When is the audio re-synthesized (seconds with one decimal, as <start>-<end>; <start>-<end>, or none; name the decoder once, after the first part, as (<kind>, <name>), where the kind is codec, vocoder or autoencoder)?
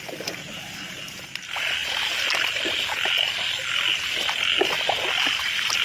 none